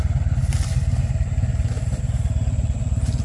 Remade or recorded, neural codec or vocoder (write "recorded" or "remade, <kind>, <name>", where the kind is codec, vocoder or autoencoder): recorded